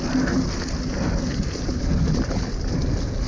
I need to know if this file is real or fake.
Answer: real